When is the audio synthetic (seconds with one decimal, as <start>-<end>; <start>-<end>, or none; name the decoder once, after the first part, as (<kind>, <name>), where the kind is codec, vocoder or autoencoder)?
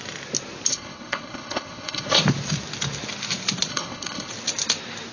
0.7-2.2 (codec, HILCodec); 3.7-4.3